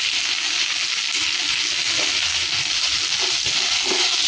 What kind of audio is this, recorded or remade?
recorded